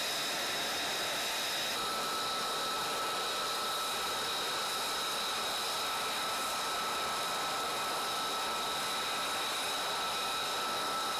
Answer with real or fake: real